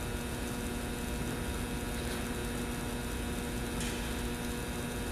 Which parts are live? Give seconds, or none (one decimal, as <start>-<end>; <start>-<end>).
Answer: 0.0-5.1